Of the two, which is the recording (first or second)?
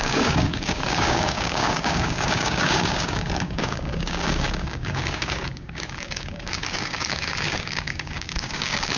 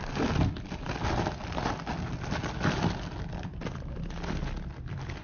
second